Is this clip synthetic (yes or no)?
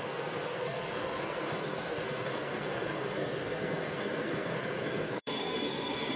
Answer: yes